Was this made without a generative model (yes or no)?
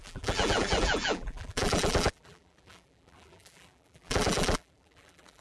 no